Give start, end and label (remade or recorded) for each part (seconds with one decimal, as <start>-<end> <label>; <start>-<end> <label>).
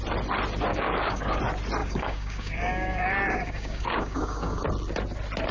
0.0-0.7 recorded; 0.7-1.4 remade; 1.4-1.8 recorded; 1.8-4.6 remade; 4.6-5.5 recorded